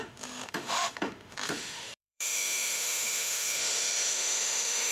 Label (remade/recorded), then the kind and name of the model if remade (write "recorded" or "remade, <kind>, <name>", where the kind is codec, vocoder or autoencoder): remade, autoencoder, DAC-VAE